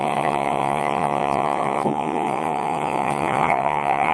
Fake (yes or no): yes